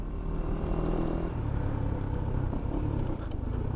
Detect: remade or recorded recorded